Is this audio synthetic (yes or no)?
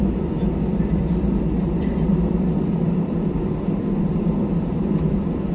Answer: yes